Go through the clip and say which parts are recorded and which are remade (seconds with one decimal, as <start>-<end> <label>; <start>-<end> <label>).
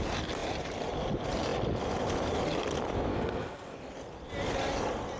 0.0-3.1 recorded; 3.1-3.8 remade; 3.8-5.2 recorded